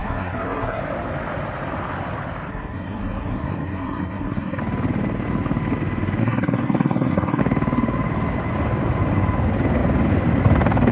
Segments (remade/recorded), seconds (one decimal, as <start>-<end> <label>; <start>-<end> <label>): 0.0-0.8 remade; 0.8-2.5 recorded; 2.5-4.6 remade; 4.6-6.2 recorded; 6.2-7.4 remade; 7.4-10.9 recorded